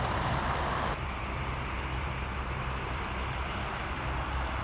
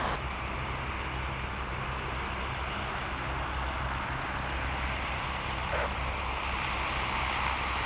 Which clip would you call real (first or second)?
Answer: second